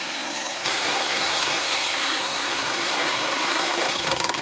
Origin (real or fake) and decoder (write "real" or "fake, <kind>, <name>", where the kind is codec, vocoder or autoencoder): fake, codec, SNAC